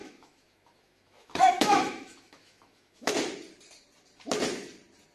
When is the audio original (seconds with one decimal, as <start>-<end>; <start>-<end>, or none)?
3.1-5.1